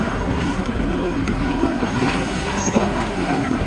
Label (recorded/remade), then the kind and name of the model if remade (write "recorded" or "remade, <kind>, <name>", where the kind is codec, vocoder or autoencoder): remade, codec, SNAC